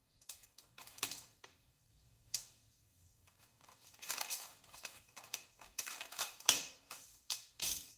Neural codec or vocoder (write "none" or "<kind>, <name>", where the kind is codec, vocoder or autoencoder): codec, DAC